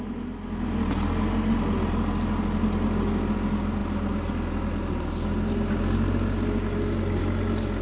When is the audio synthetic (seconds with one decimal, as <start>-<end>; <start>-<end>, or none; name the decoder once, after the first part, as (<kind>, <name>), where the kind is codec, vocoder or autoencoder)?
none